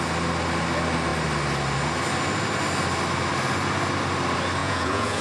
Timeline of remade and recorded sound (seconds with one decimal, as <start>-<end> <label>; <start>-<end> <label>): 0.0-4.6 recorded; 4.6-5.2 remade